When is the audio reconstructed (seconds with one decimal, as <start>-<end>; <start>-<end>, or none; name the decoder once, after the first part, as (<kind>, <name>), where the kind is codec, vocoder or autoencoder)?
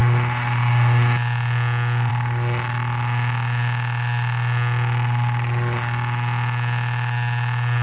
none